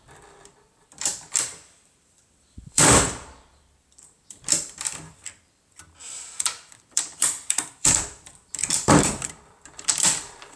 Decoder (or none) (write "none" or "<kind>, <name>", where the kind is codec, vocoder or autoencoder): vocoder, BigVGAN v2